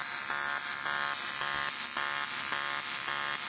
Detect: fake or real real